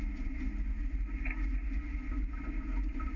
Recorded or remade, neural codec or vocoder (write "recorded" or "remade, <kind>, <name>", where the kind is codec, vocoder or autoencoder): recorded